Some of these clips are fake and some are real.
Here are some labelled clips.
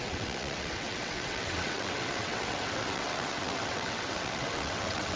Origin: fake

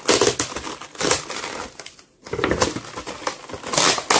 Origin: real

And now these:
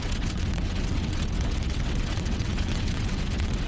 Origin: fake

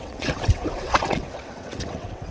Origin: fake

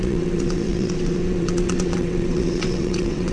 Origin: fake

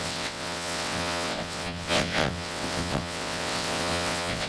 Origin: fake